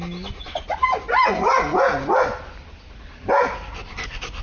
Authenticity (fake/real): real